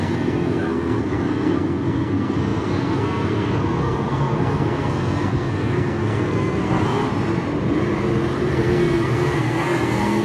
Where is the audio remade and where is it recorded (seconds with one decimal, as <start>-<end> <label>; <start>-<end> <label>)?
0.0-7.0 remade; 7.0-8.5 recorded; 8.5-10.2 remade